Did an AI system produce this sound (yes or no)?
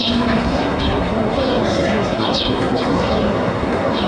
yes